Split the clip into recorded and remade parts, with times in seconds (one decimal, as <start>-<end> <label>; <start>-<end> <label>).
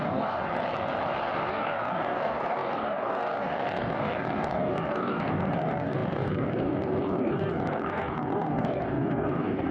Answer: 0.0-0.5 remade; 0.5-1.5 recorded; 1.5-9.7 remade